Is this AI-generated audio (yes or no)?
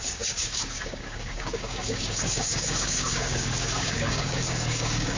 yes